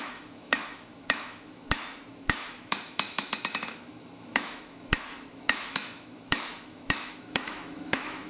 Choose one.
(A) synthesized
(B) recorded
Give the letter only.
A